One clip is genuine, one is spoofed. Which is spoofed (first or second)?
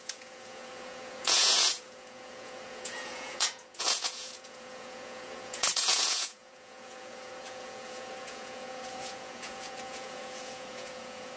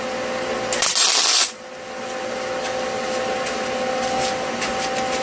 first